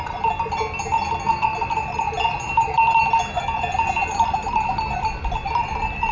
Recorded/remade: recorded